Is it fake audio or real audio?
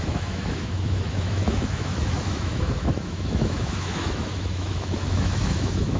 fake